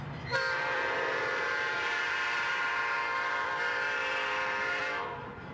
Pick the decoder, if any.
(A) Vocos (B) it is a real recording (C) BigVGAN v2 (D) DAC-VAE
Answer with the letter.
C